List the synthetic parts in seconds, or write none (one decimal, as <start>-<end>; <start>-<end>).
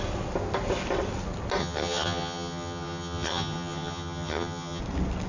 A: 1.6-4.8